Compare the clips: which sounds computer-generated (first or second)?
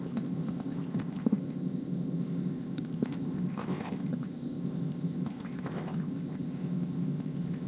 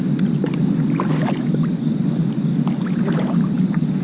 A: first